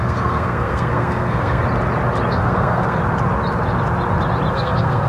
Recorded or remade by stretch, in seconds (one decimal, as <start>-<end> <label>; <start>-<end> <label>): 0.0-1.6 remade; 1.6-2.3 recorded; 2.3-3.0 remade; 3.0-4.5 recorded; 4.5-5.1 remade

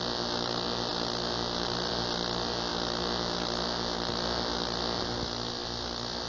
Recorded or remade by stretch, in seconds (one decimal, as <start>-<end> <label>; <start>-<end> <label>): 0.0-6.3 recorded

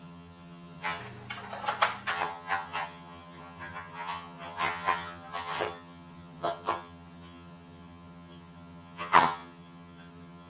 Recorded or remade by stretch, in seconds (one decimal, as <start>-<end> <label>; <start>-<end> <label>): 0.0-1.0 remade; 1.0-2.1 recorded; 2.1-10.5 remade

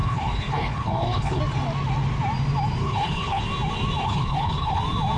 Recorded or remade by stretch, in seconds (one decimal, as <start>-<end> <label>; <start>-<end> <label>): 0.0-1.4 remade; 1.4-2.8 recorded; 2.8-3.4 remade; 3.4-4.0 recorded; 4.0-4.8 remade; 4.8-5.2 recorded

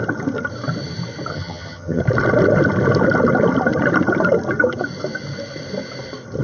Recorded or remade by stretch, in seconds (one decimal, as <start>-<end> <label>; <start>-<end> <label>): 0.0-1.3 recorded; 1.3-2.0 remade; 2.0-6.4 recorded

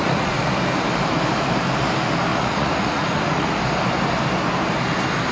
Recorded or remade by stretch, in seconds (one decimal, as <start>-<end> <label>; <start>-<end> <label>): 0.0-0.5 remade; 0.5-2.3 recorded; 2.3-3.5 remade; 3.5-5.3 recorded

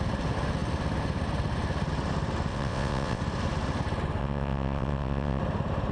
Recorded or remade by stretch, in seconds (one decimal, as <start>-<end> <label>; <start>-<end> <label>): 0.0-2.5 recorded; 2.5-3.2 remade; 3.2-4.2 recorded; 4.2-5.4 remade; 5.4-5.9 recorded